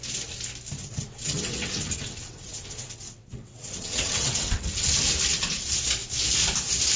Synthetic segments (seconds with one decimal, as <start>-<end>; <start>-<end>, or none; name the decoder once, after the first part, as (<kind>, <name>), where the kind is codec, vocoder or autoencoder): 0.8-5.0 (vocoder, WaveNeXt)